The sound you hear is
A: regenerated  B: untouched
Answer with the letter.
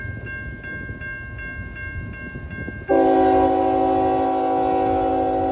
B